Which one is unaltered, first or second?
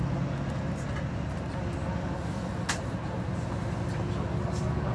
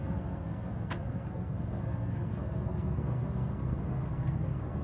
first